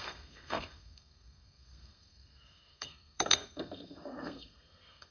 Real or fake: fake